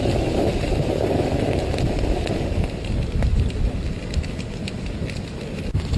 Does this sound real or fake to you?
real